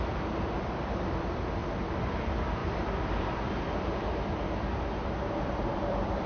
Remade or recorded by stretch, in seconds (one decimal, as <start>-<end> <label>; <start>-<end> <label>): 0.0-2.6 recorded; 2.6-4.0 remade; 4.0-5.0 recorded; 5.0-6.3 remade